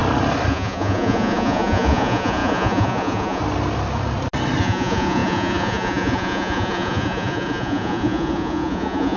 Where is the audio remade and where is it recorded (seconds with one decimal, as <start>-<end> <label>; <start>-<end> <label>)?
0.0-0.5 recorded; 0.5-3.4 remade; 3.4-4.6 recorded; 4.6-9.2 remade